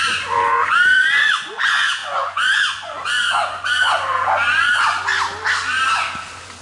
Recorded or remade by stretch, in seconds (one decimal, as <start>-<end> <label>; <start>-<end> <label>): 0.0-5.1 remade; 5.1-6.6 recorded